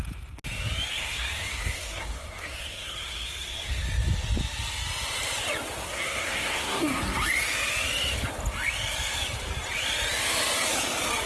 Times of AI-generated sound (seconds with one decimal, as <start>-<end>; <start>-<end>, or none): 0.9-3.8; 5.8-7.0